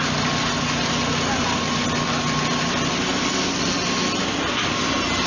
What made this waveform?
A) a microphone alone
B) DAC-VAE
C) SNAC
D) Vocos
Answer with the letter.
A